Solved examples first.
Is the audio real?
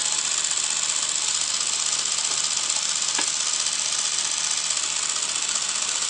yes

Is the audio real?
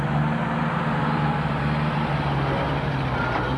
yes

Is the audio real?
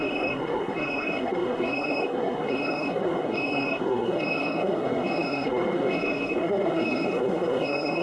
no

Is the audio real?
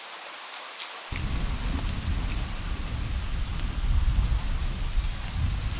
yes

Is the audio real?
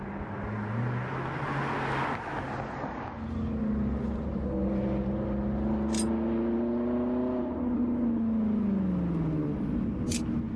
yes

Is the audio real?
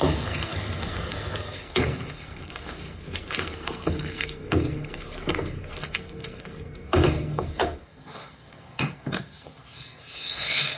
no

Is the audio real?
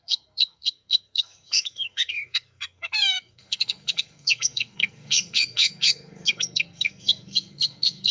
no